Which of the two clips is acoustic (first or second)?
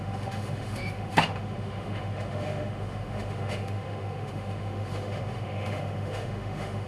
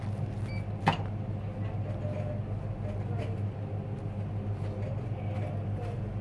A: second